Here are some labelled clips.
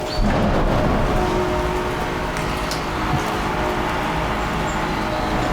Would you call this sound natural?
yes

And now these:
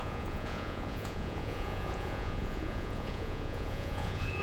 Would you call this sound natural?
no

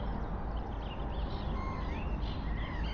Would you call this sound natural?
yes